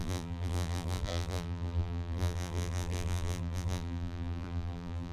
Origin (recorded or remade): remade